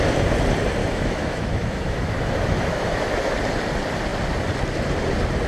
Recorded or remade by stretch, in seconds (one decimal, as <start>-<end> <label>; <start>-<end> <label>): 0.0-0.8 recorded; 0.8-3.3 remade; 3.3-5.5 recorded